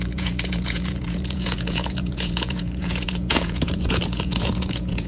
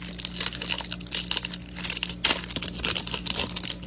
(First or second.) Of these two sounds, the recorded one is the second